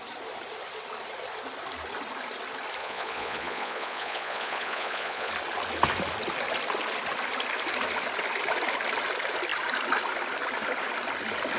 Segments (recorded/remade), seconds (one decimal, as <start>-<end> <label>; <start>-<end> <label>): 0.0-2.8 recorded; 2.8-5.3 remade; 5.3-11.6 recorded

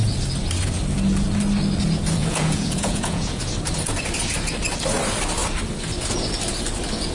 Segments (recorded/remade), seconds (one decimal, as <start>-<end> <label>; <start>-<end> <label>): 0.0-2.2 recorded; 2.2-3.4 remade; 3.4-7.1 recorded